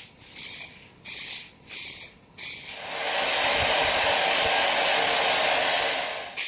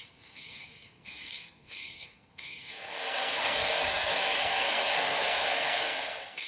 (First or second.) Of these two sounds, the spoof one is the second